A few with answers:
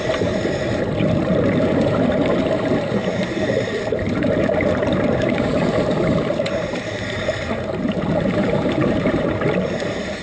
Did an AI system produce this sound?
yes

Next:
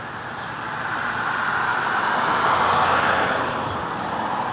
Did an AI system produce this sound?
no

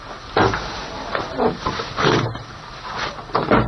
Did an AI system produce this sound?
no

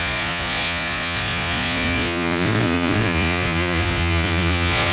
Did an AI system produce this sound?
yes